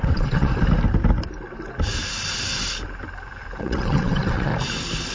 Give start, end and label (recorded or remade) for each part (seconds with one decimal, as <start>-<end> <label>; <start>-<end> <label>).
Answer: 0.0-0.5 remade; 0.5-3.6 recorded; 3.6-4.5 remade; 4.5-5.1 recorded